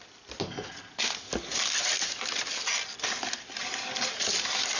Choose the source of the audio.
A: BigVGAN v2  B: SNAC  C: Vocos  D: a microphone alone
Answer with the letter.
D